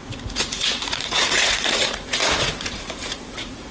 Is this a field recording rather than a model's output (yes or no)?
no